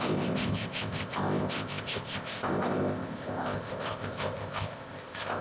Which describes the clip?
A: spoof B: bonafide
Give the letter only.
A